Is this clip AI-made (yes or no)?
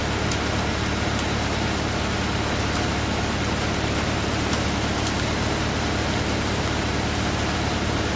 no